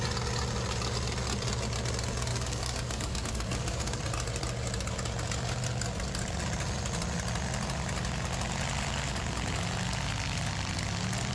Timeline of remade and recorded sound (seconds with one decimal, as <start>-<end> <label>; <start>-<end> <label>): 0.0-2.3 recorded; 2.3-4.0 remade; 4.0-11.3 recorded